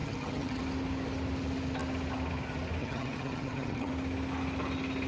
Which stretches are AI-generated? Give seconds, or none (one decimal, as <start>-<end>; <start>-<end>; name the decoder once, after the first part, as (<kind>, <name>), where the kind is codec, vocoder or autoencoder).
0.0-0.6 (vocoder, HiFi-GAN); 2.8-3.9